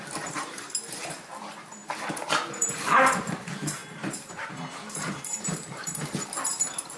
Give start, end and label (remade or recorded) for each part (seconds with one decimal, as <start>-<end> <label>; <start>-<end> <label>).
0.0-1.8 remade; 1.8-2.5 recorded; 2.5-7.0 remade